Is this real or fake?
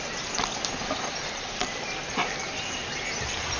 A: fake